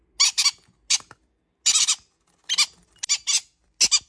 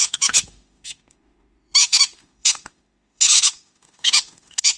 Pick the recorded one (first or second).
first